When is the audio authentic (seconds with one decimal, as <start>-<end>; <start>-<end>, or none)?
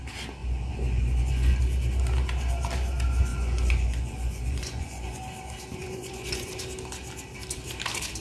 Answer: 0.0-0.4; 1.6-3.3; 5.2-5.8; 6.5-8.2